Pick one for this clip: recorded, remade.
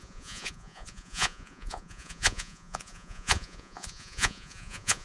remade